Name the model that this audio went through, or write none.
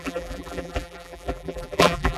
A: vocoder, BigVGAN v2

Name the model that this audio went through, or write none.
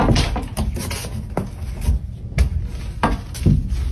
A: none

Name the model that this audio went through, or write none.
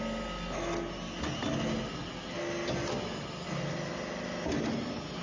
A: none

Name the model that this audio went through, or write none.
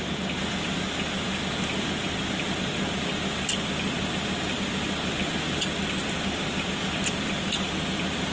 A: none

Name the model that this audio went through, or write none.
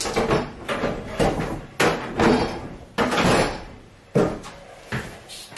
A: none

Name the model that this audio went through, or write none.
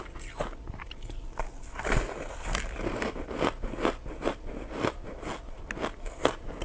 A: none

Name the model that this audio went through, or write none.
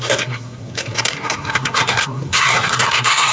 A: codec, SNAC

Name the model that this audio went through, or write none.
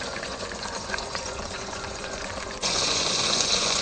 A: vocoder, Vocos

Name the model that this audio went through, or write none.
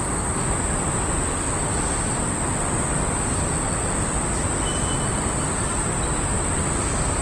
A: none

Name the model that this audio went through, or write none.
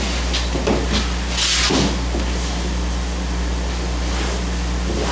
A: none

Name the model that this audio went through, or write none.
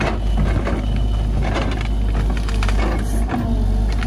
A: none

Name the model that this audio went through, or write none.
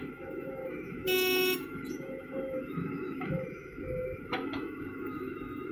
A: autoencoder, DAC-VAE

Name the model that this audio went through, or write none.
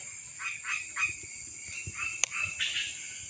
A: none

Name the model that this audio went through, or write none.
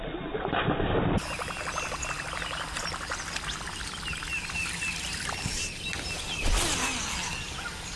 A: none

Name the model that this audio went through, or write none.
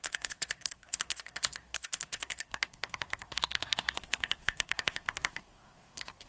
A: codec, SNAC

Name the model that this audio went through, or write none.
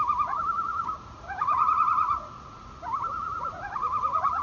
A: vocoder, Vocos